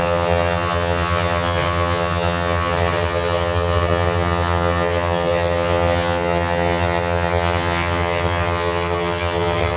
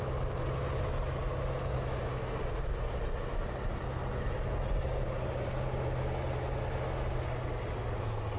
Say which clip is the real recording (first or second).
second